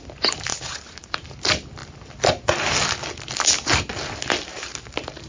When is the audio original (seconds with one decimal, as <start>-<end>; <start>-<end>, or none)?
0.0-0.5; 1.4-4.5